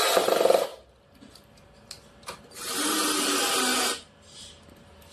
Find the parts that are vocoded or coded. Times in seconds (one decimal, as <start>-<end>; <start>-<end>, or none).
none